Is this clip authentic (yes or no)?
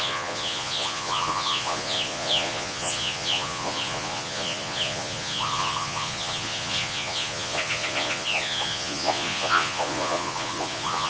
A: no